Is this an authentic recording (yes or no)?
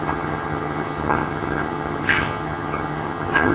no